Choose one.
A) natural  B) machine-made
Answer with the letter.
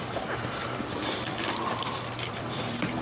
B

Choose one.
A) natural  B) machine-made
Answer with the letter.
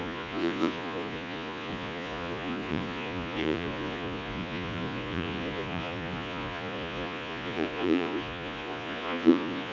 B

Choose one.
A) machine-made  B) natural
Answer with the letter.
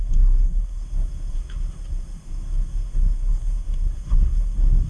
A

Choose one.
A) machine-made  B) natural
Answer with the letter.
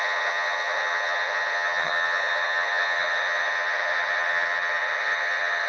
A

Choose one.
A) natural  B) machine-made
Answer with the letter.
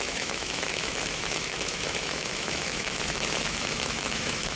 B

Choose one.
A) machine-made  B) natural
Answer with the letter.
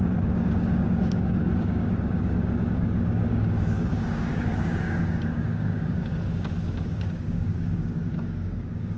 A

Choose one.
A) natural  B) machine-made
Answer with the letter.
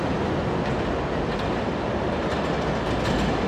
A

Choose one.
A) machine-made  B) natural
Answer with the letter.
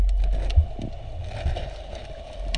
B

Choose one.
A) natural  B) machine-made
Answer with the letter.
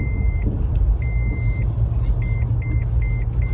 A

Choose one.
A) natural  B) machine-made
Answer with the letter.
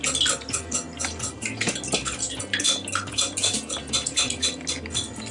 A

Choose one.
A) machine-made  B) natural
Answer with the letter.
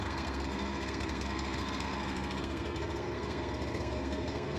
A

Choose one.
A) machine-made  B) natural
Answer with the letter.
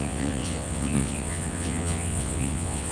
A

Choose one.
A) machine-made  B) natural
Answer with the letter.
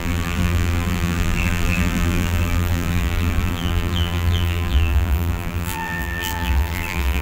A